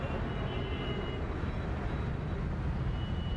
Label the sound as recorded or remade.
recorded